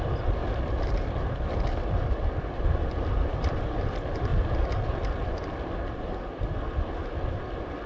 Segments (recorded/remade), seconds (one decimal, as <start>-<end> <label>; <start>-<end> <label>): 0.0-0.4 remade; 0.4-2.0 recorded; 2.0-4.3 remade; 4.3-7.4 recorded; 7.4-7.9 remade